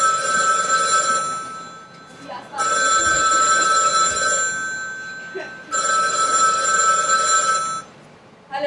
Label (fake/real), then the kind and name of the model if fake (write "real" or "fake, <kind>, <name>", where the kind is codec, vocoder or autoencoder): real